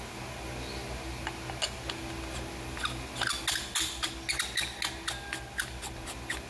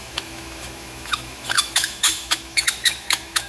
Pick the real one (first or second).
first